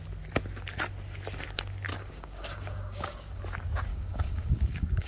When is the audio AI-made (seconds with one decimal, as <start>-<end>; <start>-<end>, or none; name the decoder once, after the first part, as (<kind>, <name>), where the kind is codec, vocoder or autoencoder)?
1.9-3.4 (codec, DAC); 3.9-5.1